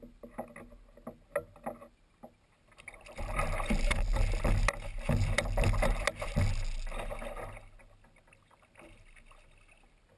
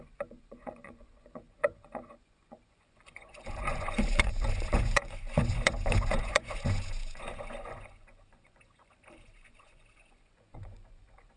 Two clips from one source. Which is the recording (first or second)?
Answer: first